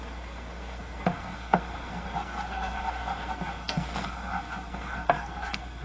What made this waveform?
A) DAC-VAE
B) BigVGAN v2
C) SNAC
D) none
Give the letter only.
C